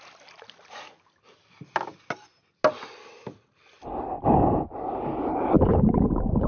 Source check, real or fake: real